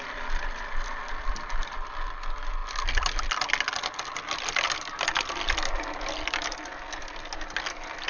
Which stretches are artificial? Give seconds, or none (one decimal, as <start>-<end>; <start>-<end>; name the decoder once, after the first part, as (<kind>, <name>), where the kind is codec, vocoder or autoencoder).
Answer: none